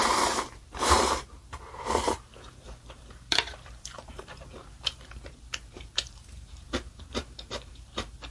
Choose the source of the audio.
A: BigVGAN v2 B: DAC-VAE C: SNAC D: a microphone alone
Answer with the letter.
A